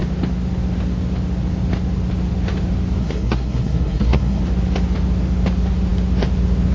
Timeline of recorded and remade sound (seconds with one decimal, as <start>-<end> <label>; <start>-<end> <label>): 0.0-3.0 recorded; 3.0-4.4 remade; 4.4-6.7 recorded